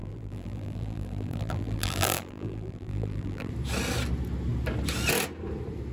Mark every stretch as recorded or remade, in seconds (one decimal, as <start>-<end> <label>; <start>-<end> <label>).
0.0-3.5 remade; 3.5-5.9 recorded